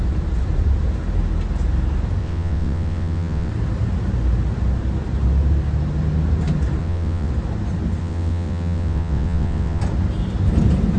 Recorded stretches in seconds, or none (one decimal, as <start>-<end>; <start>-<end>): 0.0-2.2; 3.5-6.8; 7.3-8.0; 9.8-11.0